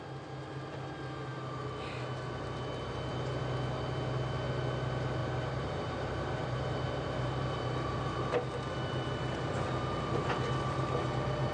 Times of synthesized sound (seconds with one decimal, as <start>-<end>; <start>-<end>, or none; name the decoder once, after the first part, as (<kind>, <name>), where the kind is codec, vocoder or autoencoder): 5.2-8.0 (vocoder, BigVGAN v2)